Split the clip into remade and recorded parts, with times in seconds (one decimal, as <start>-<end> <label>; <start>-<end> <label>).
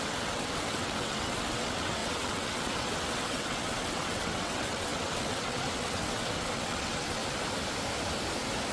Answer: 0.0-7.2 remade; 7.2-8.7 recorded